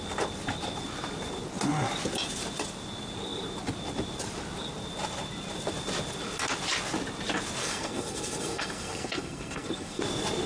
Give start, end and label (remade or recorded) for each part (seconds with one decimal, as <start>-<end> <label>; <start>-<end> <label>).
0.0-7.6 recorded; 7.6-10.0 remade; 10.0-10.5 recorded

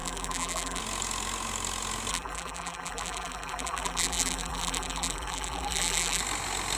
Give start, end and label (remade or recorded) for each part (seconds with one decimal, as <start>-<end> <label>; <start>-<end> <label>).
0.0-0.8 remade; 0.8-2.1 recorded; 2.1-6.2 remade; 6.2-6.8 recorded

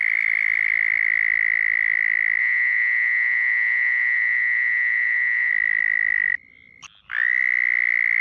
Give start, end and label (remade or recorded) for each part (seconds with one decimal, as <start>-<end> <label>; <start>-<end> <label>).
0.0-2.4 recorded; 2.4-5.5 remade; 5.5-8.2 recorded

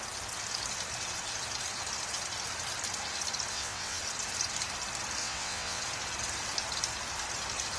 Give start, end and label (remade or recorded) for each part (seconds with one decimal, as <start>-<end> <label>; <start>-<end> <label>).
0.0-3.5 recorded; 3.5-4.0 remade; 4.0-5.2 recorded; 5.2-5.8 remade; 5.8-7.8 recorded

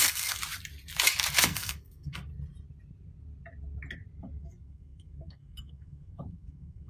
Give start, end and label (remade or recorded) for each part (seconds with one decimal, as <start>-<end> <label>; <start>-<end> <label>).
0.0-0.4 remade; 0.4-1.4 recorded; 1.4-2.3 remade; 2.3-4.4 recorded; 4.4-6.9 remade

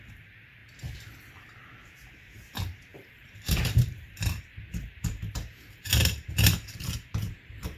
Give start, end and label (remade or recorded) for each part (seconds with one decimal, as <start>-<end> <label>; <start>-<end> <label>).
0.0-0.6 remade; 0.6-1.3 recorded; 1.3-7.8 remade